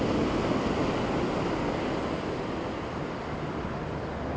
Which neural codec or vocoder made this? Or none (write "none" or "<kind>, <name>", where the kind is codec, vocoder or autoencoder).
none